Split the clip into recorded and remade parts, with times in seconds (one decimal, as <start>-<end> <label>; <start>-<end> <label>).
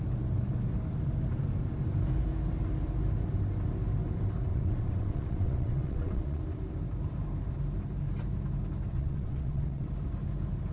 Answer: 0.0-4.5 recorded; 4.5-6.4 remade; 6.4-8.9 recorded; 8.9-9.9 remade; 9.9-10.7 recorded